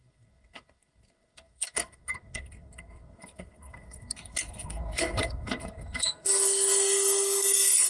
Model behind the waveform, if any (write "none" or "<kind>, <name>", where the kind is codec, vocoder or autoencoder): codec, SNAC